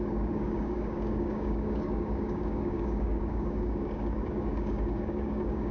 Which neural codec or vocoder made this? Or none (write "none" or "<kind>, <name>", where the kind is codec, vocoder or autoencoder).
codec, DAC